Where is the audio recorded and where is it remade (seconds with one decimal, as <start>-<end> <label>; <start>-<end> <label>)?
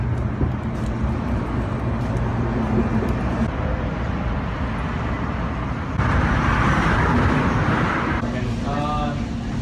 0.0-9.6 recorded